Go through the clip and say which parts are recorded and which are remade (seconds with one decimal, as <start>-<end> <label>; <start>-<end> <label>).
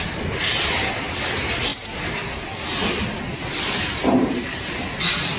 0.0-0.5 recorded; 0.5-1.1 remade; 1.1-5.4 recorded